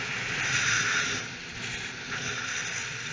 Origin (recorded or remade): recorded